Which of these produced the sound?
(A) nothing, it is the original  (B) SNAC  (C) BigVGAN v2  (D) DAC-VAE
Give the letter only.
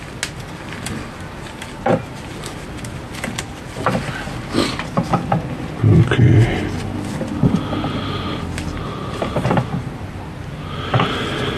A